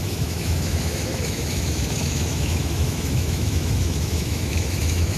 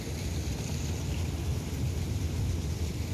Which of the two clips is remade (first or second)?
first